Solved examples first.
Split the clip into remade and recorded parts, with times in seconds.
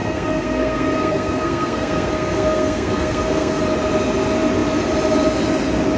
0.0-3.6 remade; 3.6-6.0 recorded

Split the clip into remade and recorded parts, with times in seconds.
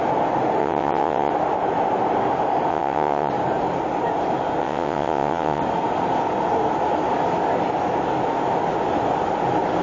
0.0-0.6 recorded; 0.6-1.3 remade; 1.3-2.7 recorded; 2.7-3.3 remade; 3.3-4.6 recorded; 4.6-5.6 remade; 5.6-9.8 recorded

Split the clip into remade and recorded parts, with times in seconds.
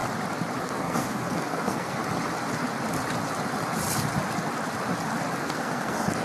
0.0-0.6 recorded; 0.6-2.0 remade; 2.0-5.4 recorded; 5.4-6.2 remade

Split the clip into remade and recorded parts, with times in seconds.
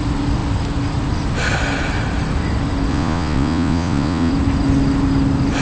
0.0-2.9 recorded; 2.9-4.3 remade; 4.3-5.6 recorded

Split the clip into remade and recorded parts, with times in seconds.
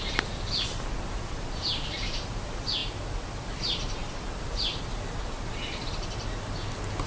0.0-7.1 recorded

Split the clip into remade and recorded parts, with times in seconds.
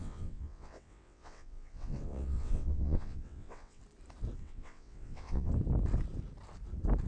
0.0-3.8 remade; 3.8-4.4 recorded; 4.4-5.5 remade; 5.5-7.1 recorded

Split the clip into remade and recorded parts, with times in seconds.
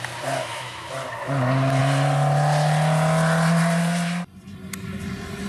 0.0-0.4 recorded; 0.4-0.9 remade; 0.9-5.5 recorded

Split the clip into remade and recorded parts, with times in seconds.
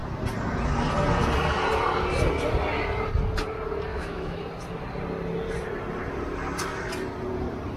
0.0-3.9 recorded; 3.9-4.4 remade; 4.4-7.8 recorded